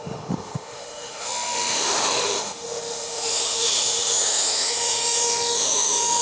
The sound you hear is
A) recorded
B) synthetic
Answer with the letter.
B